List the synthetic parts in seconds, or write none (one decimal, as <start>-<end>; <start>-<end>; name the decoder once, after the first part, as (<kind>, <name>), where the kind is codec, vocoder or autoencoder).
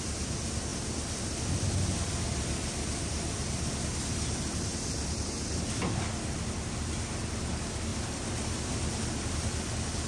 7.9-10.1 (vocoder, BigVGAN v2)